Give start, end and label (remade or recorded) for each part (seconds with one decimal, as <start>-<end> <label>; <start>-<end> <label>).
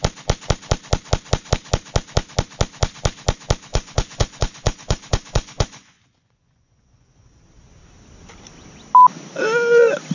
0.0-3.7 recorded; 3.7-7.4 remade; 7.4-10.1 recorded